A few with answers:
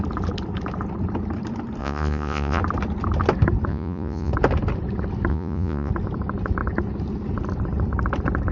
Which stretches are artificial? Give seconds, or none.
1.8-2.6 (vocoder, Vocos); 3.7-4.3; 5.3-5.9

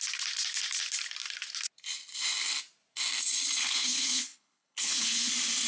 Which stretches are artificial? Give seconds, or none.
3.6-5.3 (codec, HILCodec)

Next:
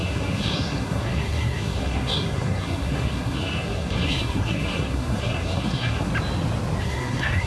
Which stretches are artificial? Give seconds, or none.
0.0-6.1 (codec, SNAC); 6.8-7.5